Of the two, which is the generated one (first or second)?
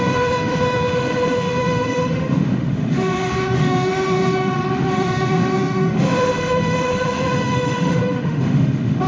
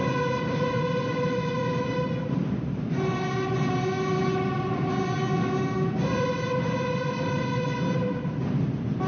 first